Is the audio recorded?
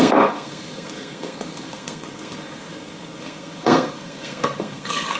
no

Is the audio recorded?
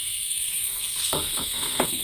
no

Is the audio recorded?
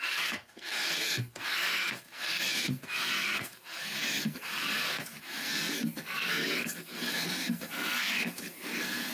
no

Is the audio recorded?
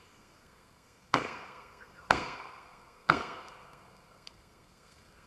no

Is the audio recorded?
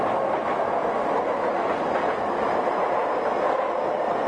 yes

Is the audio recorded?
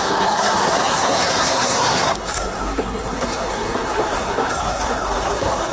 no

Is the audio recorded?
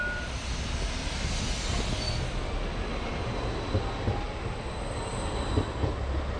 yes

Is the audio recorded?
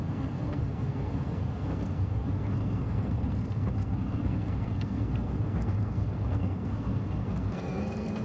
no